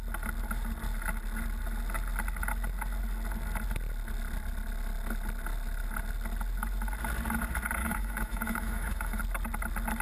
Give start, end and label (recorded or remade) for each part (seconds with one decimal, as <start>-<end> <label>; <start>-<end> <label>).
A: 0.0-7.8 recorded; 7.8-9.2 remade; 9.2-10.0 recorded